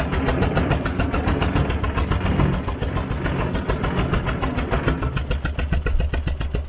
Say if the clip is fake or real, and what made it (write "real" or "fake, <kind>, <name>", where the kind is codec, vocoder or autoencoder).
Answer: real